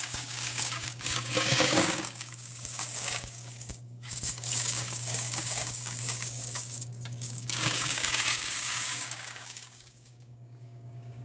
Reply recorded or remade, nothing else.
remade